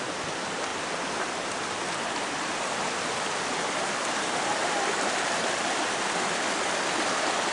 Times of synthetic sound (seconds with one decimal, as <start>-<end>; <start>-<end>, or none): none